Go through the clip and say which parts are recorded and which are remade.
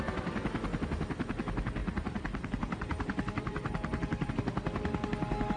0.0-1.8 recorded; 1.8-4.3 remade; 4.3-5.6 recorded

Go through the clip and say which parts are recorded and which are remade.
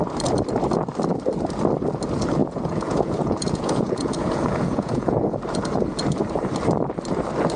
0.0-2.4 recorded; 2.4-5.4 remade; 5.4-7.6 recorded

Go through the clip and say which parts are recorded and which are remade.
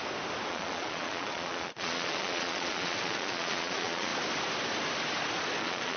0.0-0.5 recorded; 0.5-4.1 remade; 4.1-5.6 recorded; 5.6-6.0 remade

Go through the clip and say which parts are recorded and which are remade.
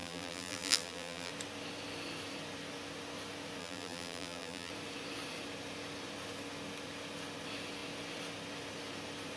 0.0-1.3 remade; 1.3-3.6 recorded; 3.6-4.7 remade; 4.7-9.4 recorded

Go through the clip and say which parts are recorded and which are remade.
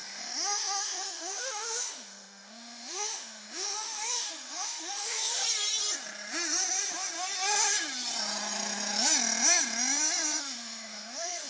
0.0-5.4 remade; 5.4-10.4 recorded; 10.4-11.5 remade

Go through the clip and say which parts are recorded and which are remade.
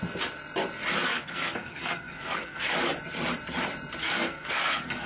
0.0-1.1 recorded; 1.1-2.6 remade; 2.6-4.0 recorded; 4.0-5.1 remade